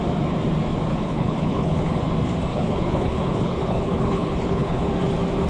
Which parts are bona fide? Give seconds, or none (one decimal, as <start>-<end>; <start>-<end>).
0.0-0.9; 2.0-2.5; 4.9-5.5